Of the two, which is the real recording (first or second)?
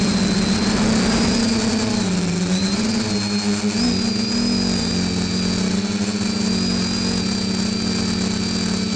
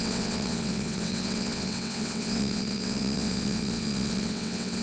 first